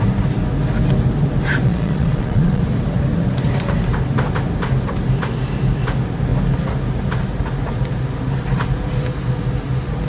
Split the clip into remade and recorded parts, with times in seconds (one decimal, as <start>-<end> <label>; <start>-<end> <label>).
0.0-1.6 recorded; 1.6-2.6 remade; 2.6-10.1 recorded